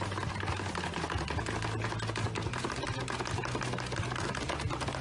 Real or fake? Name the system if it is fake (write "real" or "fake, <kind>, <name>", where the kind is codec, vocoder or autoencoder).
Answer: real